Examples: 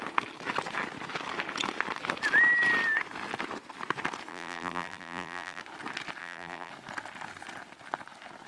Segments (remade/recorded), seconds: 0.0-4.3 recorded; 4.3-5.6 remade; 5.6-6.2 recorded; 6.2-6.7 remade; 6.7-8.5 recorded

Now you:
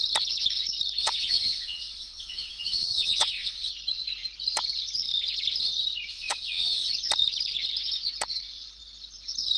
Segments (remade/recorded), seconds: 0.0-1.0 recorded; 1.0-3.7 remade; 3.7-6.1 recorded; 6.1-6.9 remade; 6.9-9.6 recorded

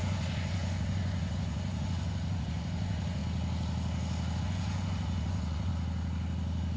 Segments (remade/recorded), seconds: 0.0-3.2 remade; 3.2-4.4 recorded; 4.4-5.7 remade; 5.7-6.8 recorded

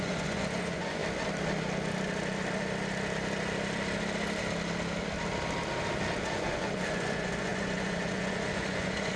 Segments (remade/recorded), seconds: 0.0-1.0 remade; 1.0-6.2 recorded; 6.2-9.2 remade

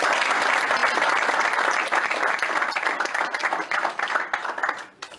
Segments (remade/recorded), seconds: 0.0-5.2 recorded

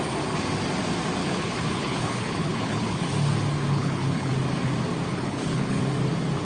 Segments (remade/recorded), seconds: 0.0-1.2 recorded; 1.2-3.1 remade; 3.1-3.7 recorded; 3.7-4.3 remade; 4.3-5.1 recorded; 5.1-5.8 remade; 5.8-6.4 recorded

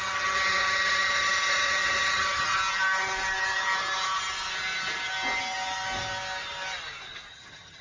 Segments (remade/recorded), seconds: 0.0-2.6 remade; 2.6-7.3 recorded; 7.3-7.8 remade